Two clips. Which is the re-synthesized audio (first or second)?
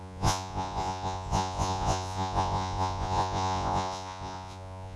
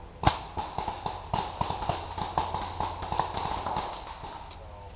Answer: first